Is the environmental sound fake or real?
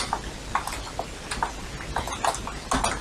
real